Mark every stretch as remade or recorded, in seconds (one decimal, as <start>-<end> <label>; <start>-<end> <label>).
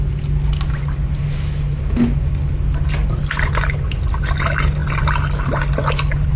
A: 0.0-6.4 recorded